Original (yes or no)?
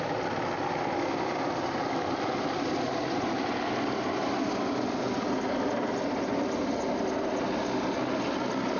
yes